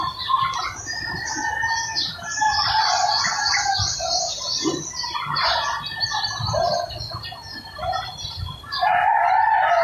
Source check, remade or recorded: recorded